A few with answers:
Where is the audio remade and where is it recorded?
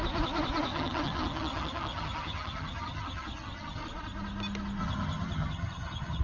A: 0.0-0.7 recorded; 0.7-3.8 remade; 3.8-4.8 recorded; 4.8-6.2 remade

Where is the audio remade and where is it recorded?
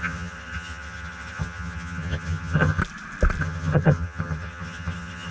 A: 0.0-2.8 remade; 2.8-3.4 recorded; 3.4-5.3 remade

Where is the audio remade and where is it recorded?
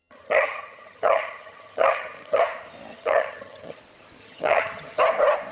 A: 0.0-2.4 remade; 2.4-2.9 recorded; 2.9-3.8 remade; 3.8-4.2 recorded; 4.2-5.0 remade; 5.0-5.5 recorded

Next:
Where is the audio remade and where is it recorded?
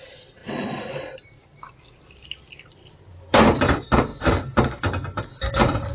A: 0.0-5.9 recorded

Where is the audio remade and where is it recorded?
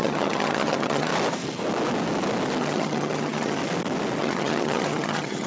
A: 0.0-1.1 remade; 1.1-2.6 recorded; 2.6-3.6 remade; 3.6-4.2 recorded; 4.2-5.5 remade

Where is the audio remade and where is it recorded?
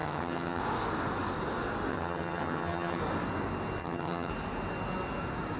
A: 0.0-0.6 remade; 0.6-1.9 recorded; 1.9-3.0 remade; 3.0-3.8 recorded; 3.8-4.3 remade; 4.3-5.6 recorded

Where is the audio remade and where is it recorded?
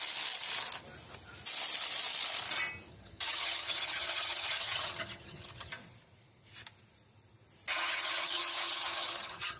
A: 0.0-2.9 recorded; 2.9-5.7 remade; 5.7-7.7 recorded; 7.7-9.6 remade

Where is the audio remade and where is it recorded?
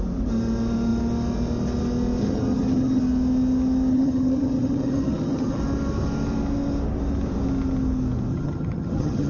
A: 0.0-2.2 recorded; 2.2-3.0 remade; 3.0-3.9 recorded; 3.9-5.6 remade; 5.6-8.3 recorded; 8.3-9.3 remade